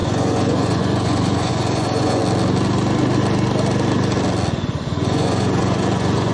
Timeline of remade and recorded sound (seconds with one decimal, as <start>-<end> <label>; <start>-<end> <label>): 0.0-2.2 remade; 2.2-4.6 recorded; 4.6-6.3 remade